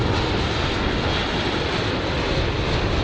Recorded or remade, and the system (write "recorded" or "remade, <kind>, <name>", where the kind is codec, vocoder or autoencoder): recorded